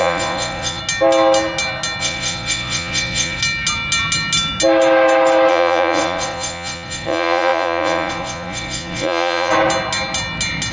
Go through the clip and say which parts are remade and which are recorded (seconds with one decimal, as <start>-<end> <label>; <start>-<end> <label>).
0.0-0.8 remade; 0.8-2.0 recorded; 2.0-3.4 remade; 3.4-5.5 recorded; 5.5-9.5 remade; 9.5-10.7 recorded